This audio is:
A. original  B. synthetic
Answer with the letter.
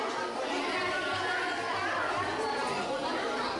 A